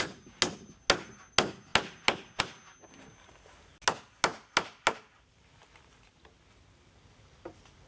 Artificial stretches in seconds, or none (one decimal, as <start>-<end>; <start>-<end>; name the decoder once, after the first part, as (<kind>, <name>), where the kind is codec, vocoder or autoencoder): none